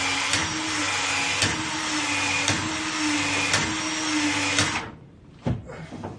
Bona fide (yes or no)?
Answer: yes